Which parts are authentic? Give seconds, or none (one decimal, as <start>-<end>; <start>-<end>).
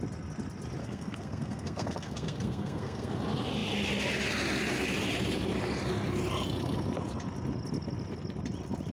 0.0-0.8; 3.1-8.9